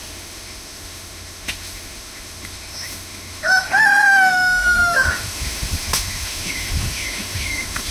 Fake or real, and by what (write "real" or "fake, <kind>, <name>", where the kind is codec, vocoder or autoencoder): fake, autoencoder, DAC-VAE